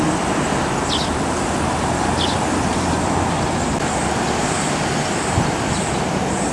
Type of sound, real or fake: real